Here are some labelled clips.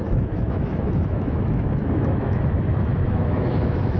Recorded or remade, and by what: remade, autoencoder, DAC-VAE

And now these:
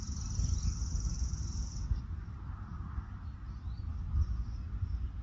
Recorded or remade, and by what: recorded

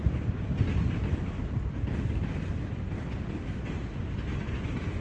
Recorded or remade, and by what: recorded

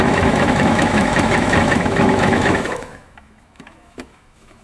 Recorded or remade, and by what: remade, autoencoder, DAC-VAE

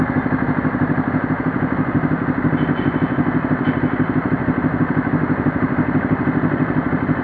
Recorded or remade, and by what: recorded